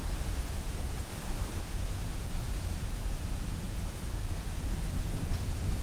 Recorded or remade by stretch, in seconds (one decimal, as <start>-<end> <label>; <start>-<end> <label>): 0.0-1.1 remade; 1.1-1.6 recorded; 1.6-5.8 remade